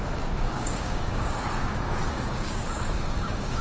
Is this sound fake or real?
fake